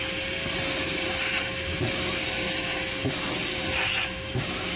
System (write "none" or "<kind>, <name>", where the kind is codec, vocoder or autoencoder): none